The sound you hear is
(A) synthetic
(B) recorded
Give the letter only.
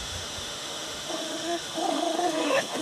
A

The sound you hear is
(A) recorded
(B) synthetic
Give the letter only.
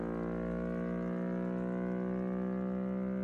A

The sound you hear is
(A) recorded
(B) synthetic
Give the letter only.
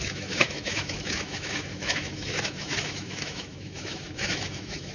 B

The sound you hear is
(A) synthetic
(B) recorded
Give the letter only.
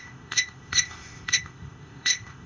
A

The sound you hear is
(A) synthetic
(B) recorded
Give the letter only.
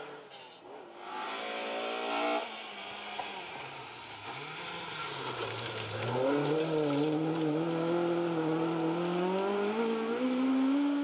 B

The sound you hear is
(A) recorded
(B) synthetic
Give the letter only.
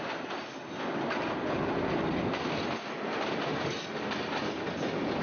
A